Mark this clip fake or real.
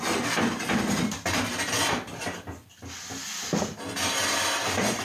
real